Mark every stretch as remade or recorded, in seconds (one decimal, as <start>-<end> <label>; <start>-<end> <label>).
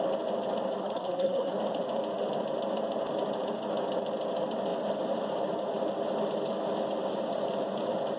0.0-0.8 recorded; 0.8-1.5 remade; 1.5-8.2 recorded